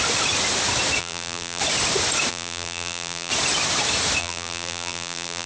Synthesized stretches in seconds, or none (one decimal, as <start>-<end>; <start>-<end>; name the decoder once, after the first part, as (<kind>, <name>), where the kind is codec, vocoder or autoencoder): 1.0-1.6 (vocoder, BigVGAN v2); 2.3-3.3; 4.2-5.5